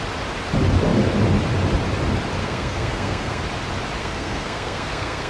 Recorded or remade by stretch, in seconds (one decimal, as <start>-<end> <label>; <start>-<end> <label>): 0.0-2.4 recorded; 2.4-3.4 remade; 3.4-4.0 recorded; 4.0-5.3 remade